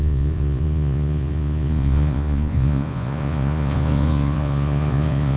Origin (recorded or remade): remade